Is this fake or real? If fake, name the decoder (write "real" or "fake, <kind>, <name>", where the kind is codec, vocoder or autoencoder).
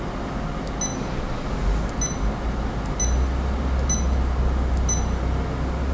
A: real